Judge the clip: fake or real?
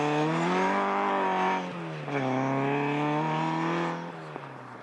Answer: real